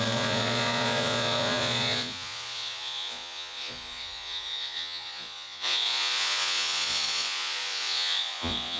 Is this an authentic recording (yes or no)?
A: no